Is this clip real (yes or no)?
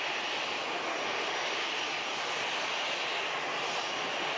yes